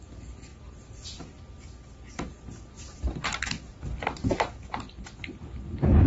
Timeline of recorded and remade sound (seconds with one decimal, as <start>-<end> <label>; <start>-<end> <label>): 0.0-6.1 recorded